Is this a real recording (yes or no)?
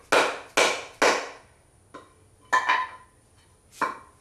yes